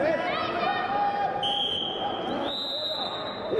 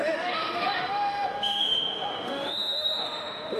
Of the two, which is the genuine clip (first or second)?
first